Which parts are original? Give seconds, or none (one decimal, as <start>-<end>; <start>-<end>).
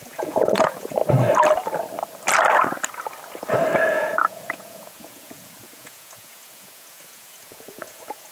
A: 1.0-3.9